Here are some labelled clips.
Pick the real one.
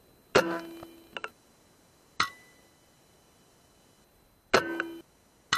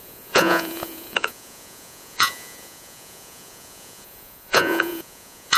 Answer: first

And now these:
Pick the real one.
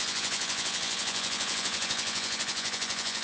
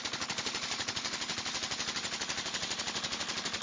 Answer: second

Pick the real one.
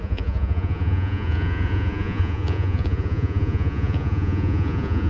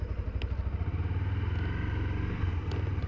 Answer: second